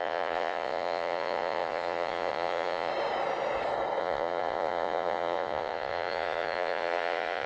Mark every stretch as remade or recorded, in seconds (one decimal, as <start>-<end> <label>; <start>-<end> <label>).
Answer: 0.0-2.9 remade; 2.9-4.0 recorded; 4.0-7.5 remade